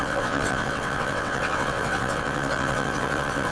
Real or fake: fake